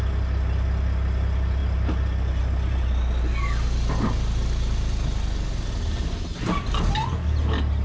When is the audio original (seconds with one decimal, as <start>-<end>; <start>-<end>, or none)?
0.0-7.8